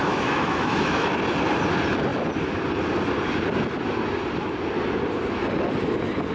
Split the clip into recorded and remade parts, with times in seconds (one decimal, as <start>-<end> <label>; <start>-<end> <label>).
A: 0.0-1.1 remade; 1.1-6.3 recorded